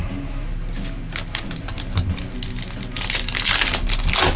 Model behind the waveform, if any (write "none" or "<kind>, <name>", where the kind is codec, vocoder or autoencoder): none